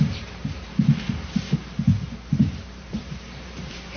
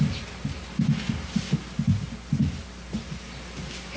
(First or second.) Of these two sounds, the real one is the second